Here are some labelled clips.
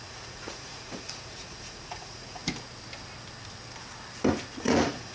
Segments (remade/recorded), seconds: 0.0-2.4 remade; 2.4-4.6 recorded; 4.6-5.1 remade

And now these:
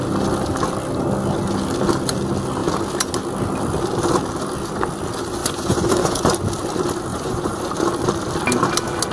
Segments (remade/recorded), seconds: 0.0-5.4 recorded; 5.4-6.2 remade; 6.2-7.1 recorded; 7.1-7.6 remade; 7.6-9.1 recorded

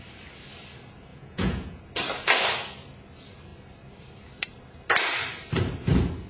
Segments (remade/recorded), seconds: 0.0-1.1 recorded; 1.1-1.8 remade; 1.8-6.3 recorded

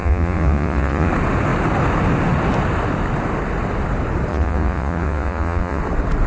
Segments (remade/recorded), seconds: 0.0-1.1 remade; 1.1-4.3 recorded; 4.3-5.8 remade; 5.8-6.3 recorded

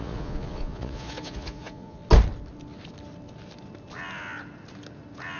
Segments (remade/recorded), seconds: 0.0-2.0 remade; 2.0-5.4 recorded